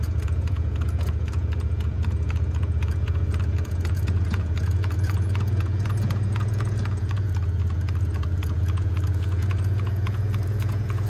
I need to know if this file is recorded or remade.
remade